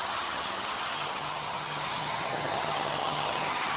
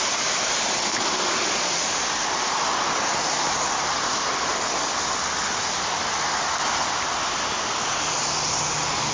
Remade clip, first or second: first